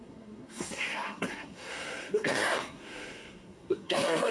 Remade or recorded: remade